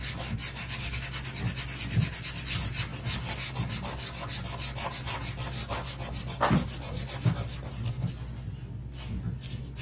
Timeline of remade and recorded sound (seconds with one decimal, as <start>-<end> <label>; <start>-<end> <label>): 0.0-9.8 recorded